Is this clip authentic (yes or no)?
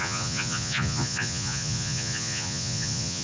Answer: no